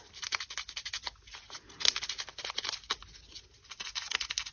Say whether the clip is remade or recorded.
recorded